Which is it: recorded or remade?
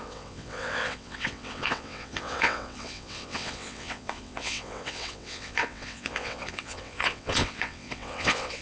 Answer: remade